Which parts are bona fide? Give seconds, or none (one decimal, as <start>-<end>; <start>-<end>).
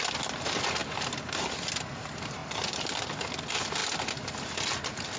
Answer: 0.0-5.2